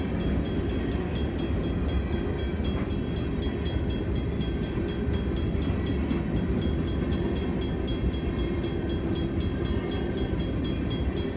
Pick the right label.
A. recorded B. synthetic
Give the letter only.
A